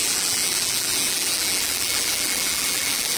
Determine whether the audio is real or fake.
fake